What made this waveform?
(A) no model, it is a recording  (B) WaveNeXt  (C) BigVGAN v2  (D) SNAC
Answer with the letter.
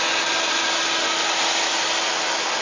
A